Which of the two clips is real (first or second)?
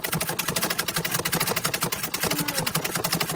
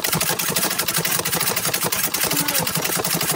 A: first